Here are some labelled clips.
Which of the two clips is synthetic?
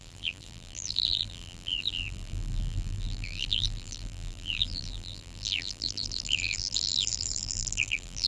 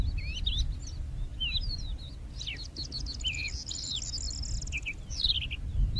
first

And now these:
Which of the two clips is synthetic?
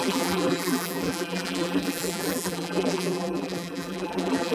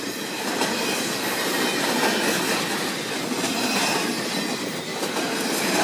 first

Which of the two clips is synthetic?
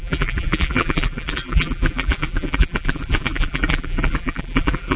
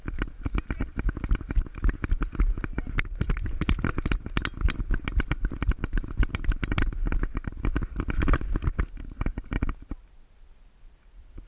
first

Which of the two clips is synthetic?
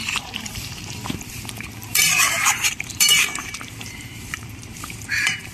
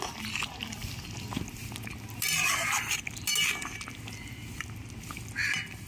first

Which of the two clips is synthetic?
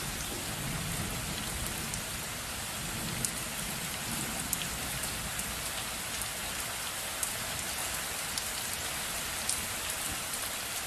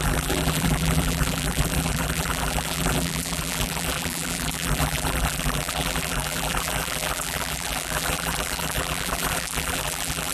second